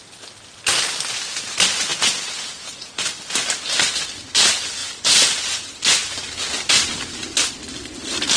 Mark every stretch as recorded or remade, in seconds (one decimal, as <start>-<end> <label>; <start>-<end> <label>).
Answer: 0.0-1.9 recorded; 1.9-3.1 remade; 3.1-4.8 recorded; 4.8-5.6 remade; 5.6-8.4 recorded